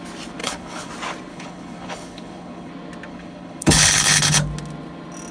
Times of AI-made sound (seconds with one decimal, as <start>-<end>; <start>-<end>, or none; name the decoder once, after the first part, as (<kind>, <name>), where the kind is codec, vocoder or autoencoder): 0.4-0.9 (codec, HILCodec); 1.3-2.7; 3.1-4.4